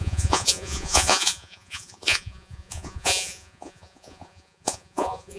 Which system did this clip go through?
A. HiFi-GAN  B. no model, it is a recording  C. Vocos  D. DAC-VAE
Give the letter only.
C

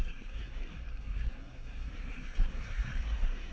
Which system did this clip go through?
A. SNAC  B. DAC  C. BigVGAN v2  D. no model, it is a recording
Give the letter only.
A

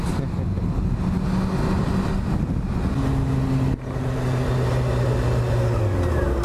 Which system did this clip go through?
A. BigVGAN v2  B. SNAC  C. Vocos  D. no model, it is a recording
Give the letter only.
D